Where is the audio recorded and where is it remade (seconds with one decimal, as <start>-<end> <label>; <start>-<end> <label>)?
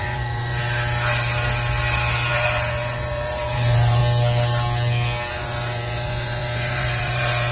0.0-0.6 remade; 0.6-2.3 recorded; 2.3-4.0 remade; 4.0-5.3 recorded; 5.3-7.5 remade